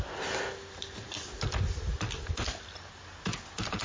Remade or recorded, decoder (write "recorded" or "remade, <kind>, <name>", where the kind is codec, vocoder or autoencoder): recorded